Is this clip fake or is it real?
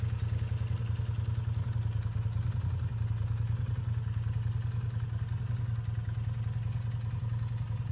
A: real